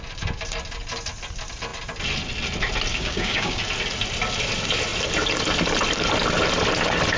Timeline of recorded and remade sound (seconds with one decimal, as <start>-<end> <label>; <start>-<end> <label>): 0.0-2.9 recorded; 2.9-3.6 remade; 3.6-7.2 recorded